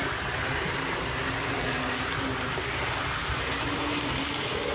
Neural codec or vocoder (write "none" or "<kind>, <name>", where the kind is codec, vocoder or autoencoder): none